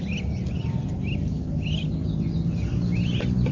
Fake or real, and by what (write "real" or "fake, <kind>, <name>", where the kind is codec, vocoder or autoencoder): real